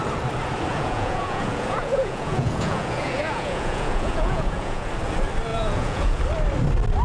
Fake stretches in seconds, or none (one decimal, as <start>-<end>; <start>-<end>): 0.7-4.9; 5.5-6.2

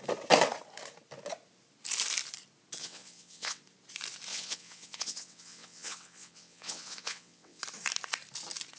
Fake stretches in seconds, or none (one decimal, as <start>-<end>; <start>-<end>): 2.8-3.6; 4.3-7.6

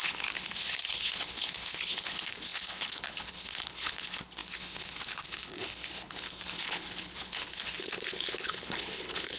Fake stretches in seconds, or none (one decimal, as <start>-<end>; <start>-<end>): 0.0-9.4

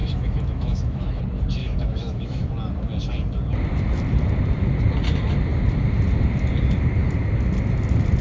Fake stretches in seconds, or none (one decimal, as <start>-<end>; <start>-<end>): 0.0-1.2; 1.6-2.5

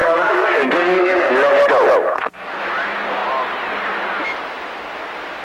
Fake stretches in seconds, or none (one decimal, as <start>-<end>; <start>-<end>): 0.0-1.3; 2.1-2.6

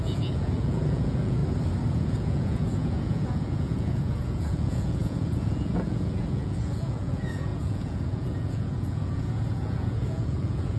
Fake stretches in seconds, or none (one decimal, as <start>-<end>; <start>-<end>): 0.0-1.4; 1.9-10.8